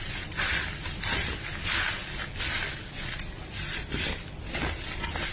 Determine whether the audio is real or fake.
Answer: real